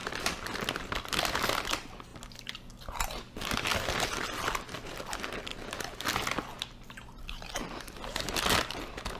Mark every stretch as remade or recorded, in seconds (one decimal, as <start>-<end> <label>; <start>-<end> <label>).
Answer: 0.0-9.2 recorded